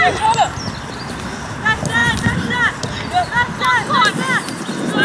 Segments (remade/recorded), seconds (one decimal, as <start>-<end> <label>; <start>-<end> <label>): 0.0-2.0 recorded; 2.0-2.7 remade; 2.7-5.0 recorded